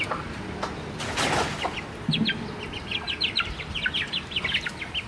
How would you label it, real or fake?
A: real